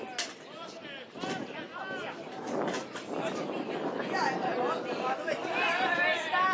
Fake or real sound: real